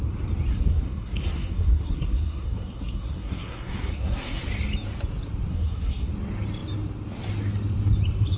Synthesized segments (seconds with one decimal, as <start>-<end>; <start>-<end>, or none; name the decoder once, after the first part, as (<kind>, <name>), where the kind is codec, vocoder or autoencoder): 0.5-4.4 (codec, SNAC); 5.5-6.1